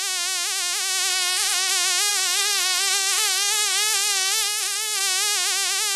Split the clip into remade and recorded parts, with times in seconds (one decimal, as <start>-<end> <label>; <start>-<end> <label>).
0.0-1.1 recorded; 1.1-1.7 remade; 1.7-2.1 recorded; 2.1-5.0 remade; 5.0-6.0 recorded